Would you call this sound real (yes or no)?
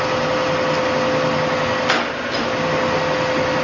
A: yes